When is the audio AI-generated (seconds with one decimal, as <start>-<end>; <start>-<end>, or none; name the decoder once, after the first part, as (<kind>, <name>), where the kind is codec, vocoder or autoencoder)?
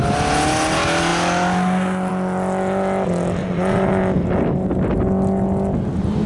3.4-4.0 (vocoder, Vocos)